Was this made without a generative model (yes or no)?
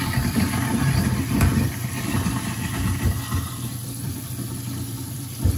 no